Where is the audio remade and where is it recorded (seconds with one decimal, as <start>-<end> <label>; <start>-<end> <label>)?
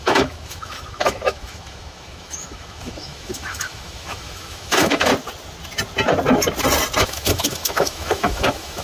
0.0-5.1 remade; 5.1-7.0 recorded; 7.0-8.8 remade